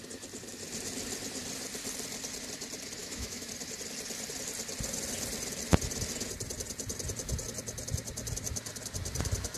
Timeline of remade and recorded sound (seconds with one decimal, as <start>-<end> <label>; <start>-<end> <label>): 0.0-3.0 recorded; 3.0-3.5 remade; 3.5-9.6 recorded